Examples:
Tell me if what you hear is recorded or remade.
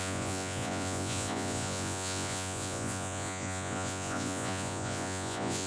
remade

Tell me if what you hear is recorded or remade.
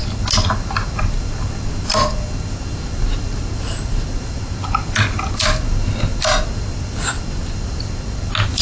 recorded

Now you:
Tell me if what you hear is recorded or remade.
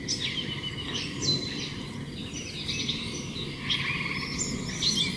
recorded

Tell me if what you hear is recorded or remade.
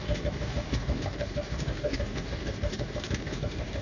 remade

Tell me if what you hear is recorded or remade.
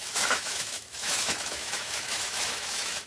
remade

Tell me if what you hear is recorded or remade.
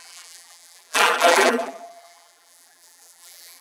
remade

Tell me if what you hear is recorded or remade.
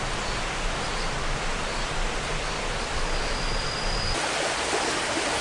recorded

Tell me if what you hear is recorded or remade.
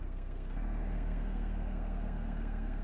remade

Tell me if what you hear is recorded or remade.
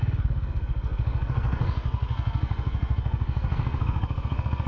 remade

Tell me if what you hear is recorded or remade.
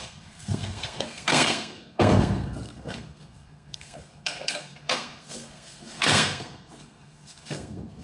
remade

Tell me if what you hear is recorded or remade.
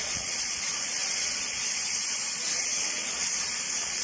remade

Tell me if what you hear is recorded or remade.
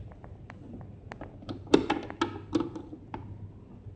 recorded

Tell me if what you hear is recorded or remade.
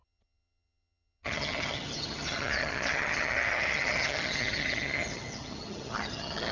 remade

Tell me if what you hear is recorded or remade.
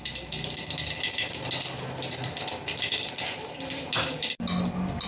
recorded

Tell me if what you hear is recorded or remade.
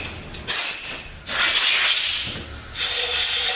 recorded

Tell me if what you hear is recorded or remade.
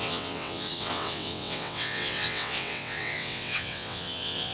remade